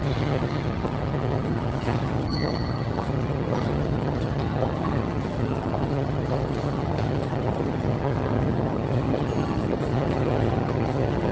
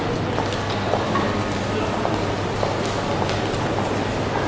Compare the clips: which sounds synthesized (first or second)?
first